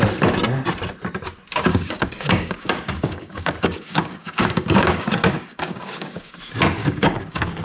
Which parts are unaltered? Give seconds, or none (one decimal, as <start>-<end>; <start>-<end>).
0.0-1.7; 6.3-6.8